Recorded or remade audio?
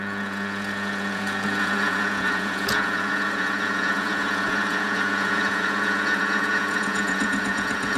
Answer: remade